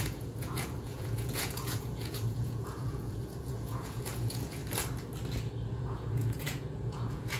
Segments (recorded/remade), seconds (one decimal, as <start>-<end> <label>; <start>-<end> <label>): 0.0-4.6 remade; 4.6-5.7 recorded; 5.7-7.4 remade